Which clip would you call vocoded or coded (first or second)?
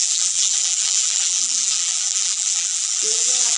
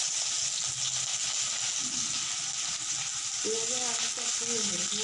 first